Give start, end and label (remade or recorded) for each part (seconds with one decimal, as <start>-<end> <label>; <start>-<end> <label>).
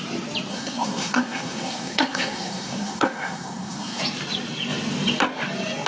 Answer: 0.0-0.5 recorded; 0.5-4.0 remade; 4.0-5.9 recorded